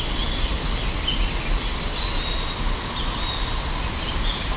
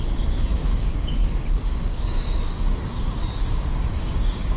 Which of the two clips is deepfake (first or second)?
second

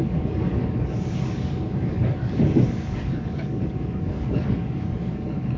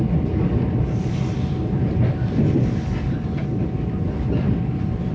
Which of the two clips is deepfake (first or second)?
first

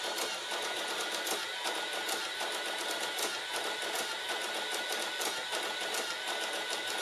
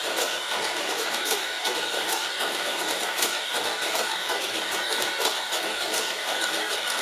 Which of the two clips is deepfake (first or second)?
second